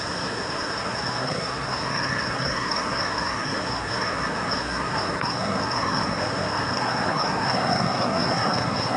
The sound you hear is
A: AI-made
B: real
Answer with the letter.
A